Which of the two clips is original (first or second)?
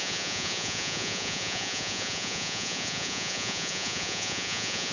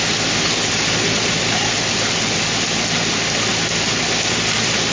second